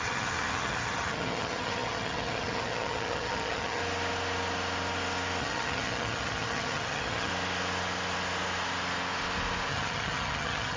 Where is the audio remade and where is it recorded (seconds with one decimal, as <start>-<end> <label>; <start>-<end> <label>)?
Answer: 0.0-3.8 remade; 3.8-5.4 recorded; 5.4-7.3 remade; 7.3-9.7 recorded; 9.7-10.8 remade